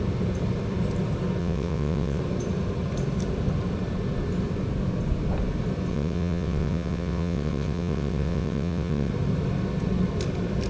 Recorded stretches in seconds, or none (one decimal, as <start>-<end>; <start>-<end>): 0.0-1.4; 2.2-5.9; 9.1-10.7

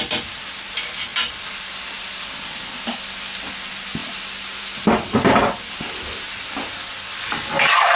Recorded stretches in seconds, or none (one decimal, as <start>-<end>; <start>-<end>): 0.0-8.0

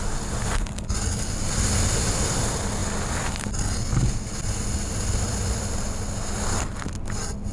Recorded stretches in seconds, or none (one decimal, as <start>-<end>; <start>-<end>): 0.0-7.5

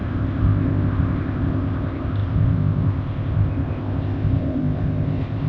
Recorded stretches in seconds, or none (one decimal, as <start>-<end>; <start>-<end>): none